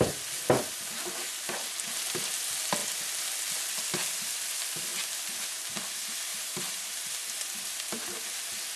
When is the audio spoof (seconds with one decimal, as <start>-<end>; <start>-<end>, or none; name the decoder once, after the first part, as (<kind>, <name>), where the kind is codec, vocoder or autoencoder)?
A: 6.3-7.0 (vocoder, BigVGAN v2)